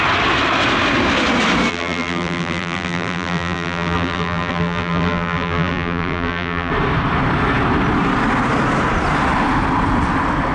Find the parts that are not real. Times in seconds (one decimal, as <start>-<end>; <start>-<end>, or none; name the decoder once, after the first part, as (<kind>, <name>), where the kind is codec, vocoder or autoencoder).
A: 1.7-6.7 (vocoder, BigVGAN v2)